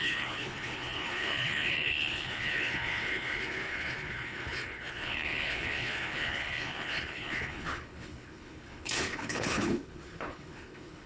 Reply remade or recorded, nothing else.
remade